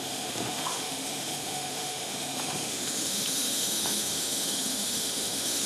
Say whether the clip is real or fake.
fake